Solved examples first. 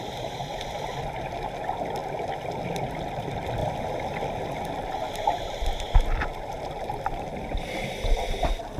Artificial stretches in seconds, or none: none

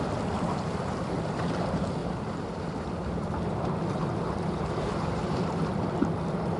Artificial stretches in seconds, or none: 2.0-5.7 (vocoder, BigVGAN v2)